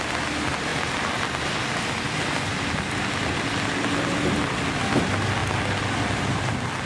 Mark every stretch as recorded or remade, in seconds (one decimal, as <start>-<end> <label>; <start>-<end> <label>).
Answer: 0.0-6.9 recorded

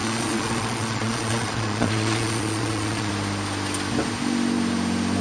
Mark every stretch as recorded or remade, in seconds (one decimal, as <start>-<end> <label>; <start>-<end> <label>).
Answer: 0.0-3.1 remade; 3.1-5.2 recorded

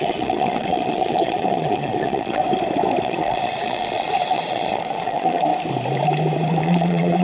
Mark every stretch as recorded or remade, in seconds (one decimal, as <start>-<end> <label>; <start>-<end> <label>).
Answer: 0.0-2.4 remade; 2.4-3.0 recorded; 3.0-5.5 remade; 5.5-6.6 recorded; 6.6-7.2 remade

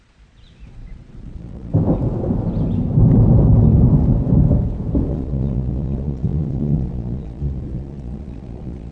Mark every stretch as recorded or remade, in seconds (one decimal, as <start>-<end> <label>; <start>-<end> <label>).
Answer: 0.0-1.7 remade; 1.7-5.1 recorded; 5.1-8.9 remade

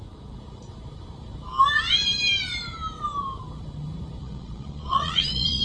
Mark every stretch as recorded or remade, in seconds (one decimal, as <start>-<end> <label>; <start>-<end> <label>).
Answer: 0.0-4.2 recorded; 4.2-5.6 remade

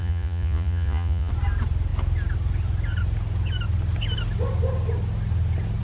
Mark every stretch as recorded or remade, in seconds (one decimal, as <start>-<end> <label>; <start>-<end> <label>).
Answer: 0.0-1.3 remade; 1.3-5.8 recorded